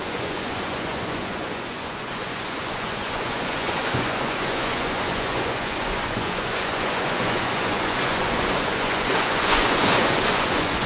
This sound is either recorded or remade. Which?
remade